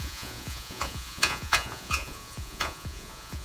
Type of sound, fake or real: fake